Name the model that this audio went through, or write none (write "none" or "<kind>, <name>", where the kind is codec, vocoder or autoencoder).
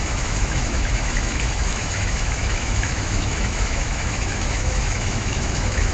autoencoder, DAC-VAE